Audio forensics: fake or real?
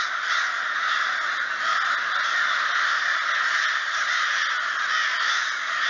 real